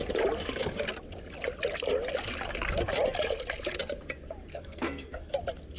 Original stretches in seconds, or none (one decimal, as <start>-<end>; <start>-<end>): 0.0-4.5; 5.3-5.8